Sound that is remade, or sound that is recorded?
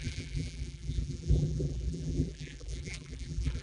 remade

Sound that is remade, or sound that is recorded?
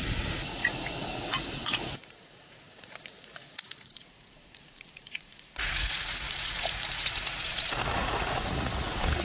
remade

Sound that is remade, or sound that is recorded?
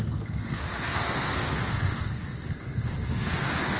remade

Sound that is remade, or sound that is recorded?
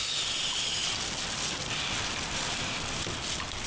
recorded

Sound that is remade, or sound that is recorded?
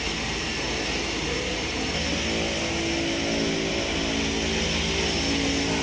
recorded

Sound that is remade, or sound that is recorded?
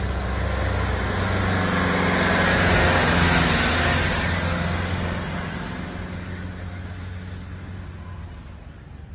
recorded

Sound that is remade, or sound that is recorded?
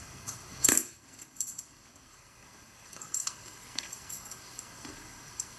remade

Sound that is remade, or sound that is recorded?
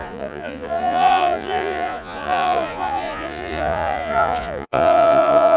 remade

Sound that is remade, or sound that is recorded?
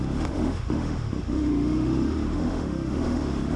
remade